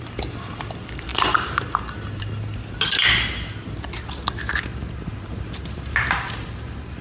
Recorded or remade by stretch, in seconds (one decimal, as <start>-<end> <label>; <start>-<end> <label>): 0.0-7.0 recorded